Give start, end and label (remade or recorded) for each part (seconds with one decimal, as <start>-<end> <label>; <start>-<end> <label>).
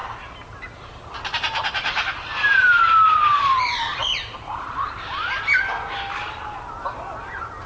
0.0-3.3 recorded; 3.3-5.4 remade; 5.4-7.7 recorded